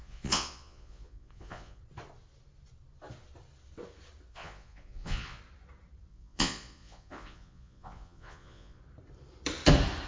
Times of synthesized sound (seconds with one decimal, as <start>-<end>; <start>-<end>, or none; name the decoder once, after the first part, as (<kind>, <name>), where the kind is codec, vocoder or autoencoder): 0.0-1.8 (vocoder, Vocos); 4.3-5.4; 6.1-8.8